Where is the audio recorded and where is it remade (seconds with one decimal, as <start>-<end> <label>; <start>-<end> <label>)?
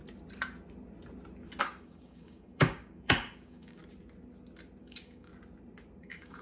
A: 0.0-1.6 recorded; 1.6-3.8 remade; 3.8-4.8 recorded; 4.8-5.3 remade; 5.3-6.0 recorded; 6.0-6.4 remade